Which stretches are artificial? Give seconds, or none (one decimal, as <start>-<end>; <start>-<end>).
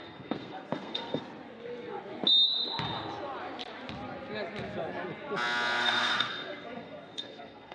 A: 0.0-1.2; 5.8-7.7